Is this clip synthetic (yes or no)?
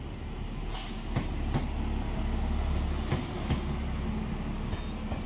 no